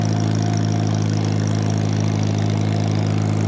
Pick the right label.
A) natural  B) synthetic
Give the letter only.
A